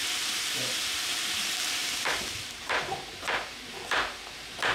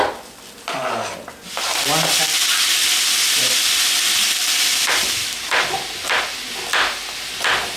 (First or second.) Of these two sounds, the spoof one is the first